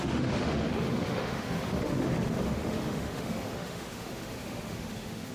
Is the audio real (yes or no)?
no